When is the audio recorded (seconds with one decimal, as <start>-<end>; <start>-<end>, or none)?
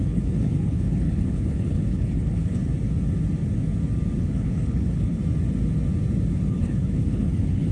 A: 2.6-4.2; 5.2-6.5